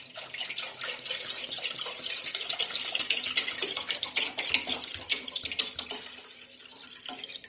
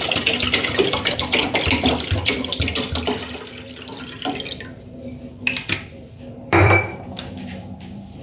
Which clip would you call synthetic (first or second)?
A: second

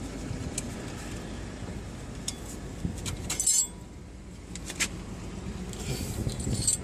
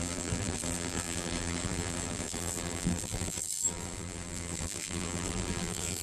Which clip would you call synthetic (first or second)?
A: second